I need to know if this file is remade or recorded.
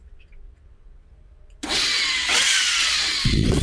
remade